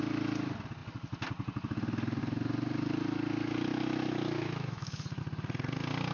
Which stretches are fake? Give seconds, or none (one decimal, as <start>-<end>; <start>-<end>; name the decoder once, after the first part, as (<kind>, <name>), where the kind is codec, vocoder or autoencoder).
3.7-5.2 (autoencoder, DAC-VAE)